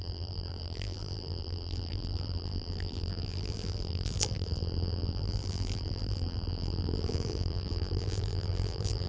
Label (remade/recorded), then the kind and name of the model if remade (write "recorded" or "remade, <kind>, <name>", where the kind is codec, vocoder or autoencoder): remade, vocoder, BigVGAN v2